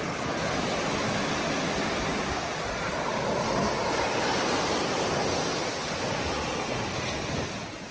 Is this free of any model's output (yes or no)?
yes